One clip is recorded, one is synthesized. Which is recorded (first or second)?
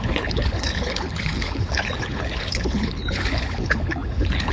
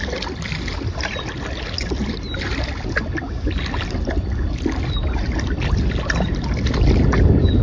second